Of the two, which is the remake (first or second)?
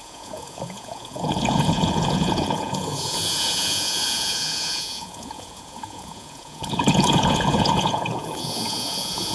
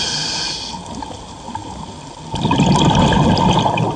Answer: first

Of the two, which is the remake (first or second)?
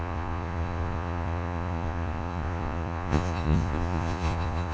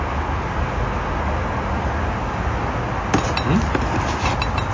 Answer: first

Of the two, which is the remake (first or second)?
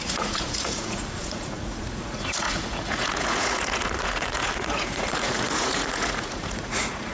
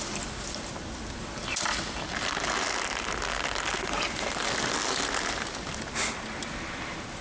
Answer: first